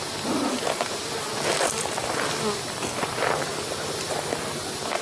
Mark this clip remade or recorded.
recorded